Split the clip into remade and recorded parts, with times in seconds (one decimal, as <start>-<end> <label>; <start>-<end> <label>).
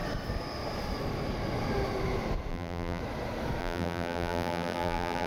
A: 0.0-2.5 recorded; 2.5-3.0 remade; 3.0-3.6 recorded; 3.6-5.3 remade